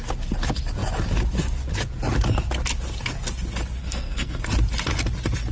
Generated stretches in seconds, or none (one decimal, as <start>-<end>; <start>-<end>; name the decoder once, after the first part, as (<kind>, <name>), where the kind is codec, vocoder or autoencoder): 3.8-4.4 (codec, SNAC)